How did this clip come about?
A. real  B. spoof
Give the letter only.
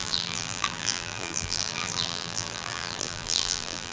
B